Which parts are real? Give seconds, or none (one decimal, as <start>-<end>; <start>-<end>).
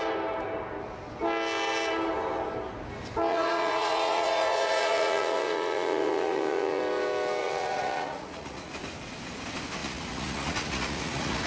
0.0-3.3; 6.8-7.4; 8.7-9.8